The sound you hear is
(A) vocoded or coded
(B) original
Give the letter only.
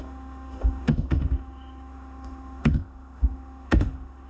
A